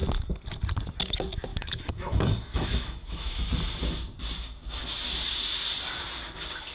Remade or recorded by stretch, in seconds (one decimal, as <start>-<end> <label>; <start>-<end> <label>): 0.0-1.5 recorded; 1.5-3.5 remade; 3.5-6.7 recorded